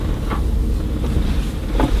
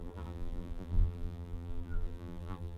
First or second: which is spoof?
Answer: second